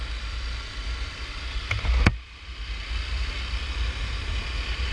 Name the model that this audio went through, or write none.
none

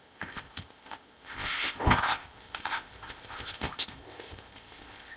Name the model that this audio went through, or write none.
codec, ZipCodec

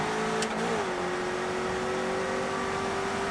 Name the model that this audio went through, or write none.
none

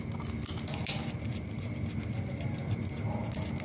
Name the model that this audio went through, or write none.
none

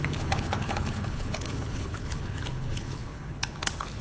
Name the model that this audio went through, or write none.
codec, HILCodec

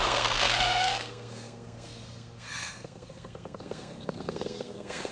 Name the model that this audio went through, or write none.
codec, SNAC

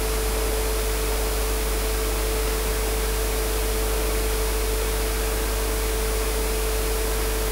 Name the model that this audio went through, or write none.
none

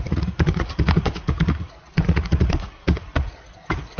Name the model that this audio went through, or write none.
vocoder, Vocos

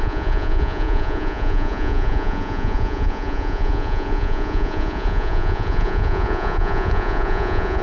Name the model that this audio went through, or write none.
vocoder, Vocos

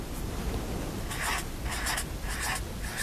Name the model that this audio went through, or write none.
none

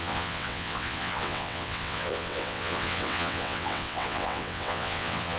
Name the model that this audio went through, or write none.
vocoder, WaveNeXt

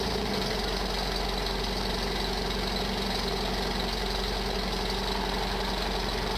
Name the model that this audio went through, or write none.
none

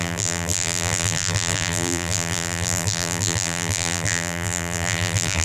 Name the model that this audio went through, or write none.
vocoder, BigVGAN v2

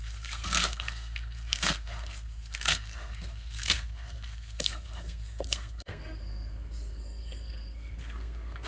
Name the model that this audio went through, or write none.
codec, SNAC